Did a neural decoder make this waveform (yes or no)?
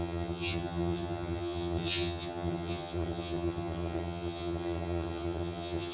yes